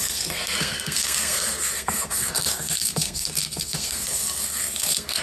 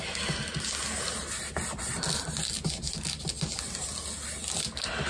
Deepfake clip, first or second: first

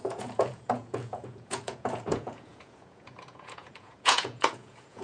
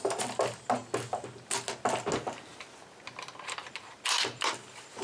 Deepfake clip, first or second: first